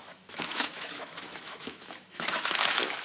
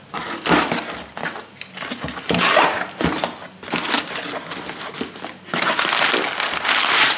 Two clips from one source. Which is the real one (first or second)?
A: second